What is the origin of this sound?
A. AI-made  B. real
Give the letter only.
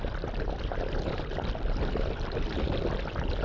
B